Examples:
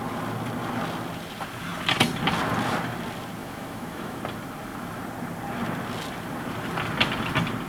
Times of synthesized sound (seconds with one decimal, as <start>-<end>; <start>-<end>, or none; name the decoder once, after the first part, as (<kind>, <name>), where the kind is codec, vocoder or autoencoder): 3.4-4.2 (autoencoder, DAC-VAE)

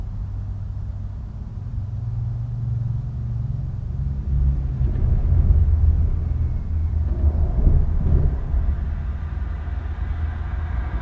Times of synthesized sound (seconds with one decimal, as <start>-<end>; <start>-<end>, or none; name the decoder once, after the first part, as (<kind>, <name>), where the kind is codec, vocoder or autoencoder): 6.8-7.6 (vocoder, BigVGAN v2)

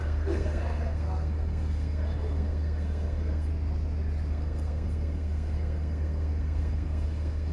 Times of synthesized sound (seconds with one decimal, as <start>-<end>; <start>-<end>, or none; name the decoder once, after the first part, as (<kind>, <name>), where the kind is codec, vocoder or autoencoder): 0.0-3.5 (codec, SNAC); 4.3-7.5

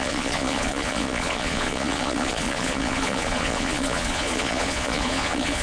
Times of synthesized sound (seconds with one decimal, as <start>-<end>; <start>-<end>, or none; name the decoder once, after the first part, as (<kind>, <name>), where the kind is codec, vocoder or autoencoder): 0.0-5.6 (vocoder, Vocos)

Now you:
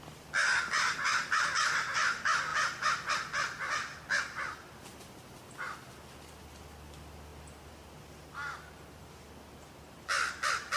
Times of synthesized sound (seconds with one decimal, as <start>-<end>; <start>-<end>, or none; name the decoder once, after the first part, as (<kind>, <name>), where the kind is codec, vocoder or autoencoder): none